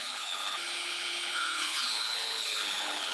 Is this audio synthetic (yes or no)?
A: yes